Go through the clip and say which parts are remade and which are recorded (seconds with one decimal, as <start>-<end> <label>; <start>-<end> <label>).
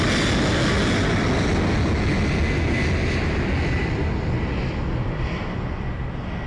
0.0-3.8 recorded; 3.8-5.9 remade; 5.9-6.5 recorded